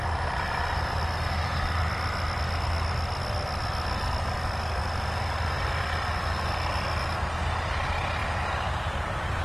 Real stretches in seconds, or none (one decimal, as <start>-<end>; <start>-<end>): 0.0-8.2